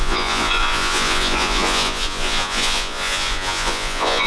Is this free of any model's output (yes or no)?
no